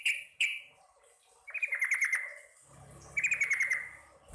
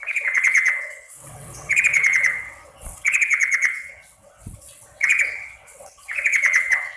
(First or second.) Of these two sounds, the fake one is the second